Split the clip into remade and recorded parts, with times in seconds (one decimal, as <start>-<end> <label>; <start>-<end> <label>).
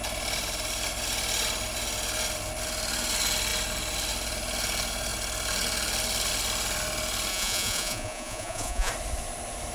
0.0-7.3 recorded; 7.3-8.9 remade; 8.9-9.7 recorded